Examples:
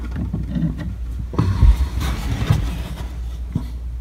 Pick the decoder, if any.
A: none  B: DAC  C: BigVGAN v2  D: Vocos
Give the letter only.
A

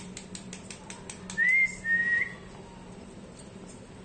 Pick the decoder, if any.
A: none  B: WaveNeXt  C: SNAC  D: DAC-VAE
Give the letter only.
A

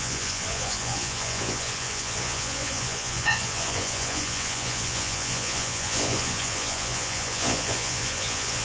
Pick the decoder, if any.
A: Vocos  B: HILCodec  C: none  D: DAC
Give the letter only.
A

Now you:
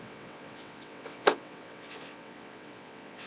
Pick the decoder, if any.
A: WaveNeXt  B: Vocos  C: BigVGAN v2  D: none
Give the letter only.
A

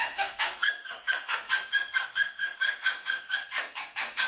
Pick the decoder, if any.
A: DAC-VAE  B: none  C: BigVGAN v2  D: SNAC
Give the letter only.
D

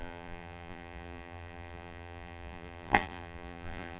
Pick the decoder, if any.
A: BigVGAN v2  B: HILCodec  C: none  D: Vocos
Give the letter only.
A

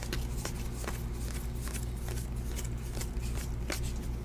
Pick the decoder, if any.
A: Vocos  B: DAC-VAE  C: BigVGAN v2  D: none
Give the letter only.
D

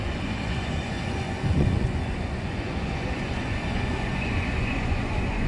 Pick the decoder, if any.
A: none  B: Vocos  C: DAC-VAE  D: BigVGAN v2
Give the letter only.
B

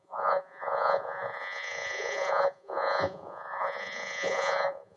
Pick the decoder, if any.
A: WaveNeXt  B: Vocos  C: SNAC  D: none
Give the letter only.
B